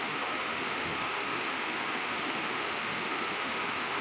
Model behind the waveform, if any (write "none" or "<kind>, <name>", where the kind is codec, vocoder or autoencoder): autoencoder, DAC-VAE